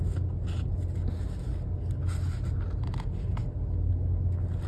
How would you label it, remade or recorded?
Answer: recorded